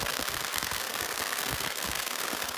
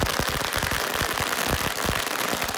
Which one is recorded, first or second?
second